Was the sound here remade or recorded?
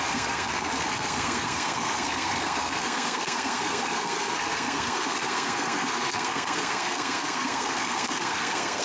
remade